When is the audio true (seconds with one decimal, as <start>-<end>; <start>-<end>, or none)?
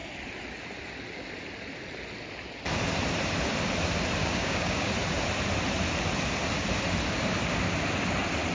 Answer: 0.0-4.2; 4.9-8.5